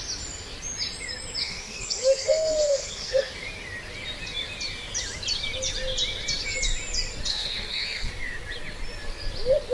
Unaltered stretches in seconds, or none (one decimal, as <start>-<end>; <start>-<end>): 0.0-1.4; 3.3-7.3; 8.1-9.7